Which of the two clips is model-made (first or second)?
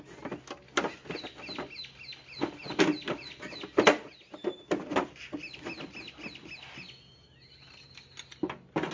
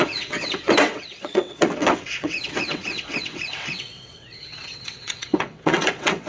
second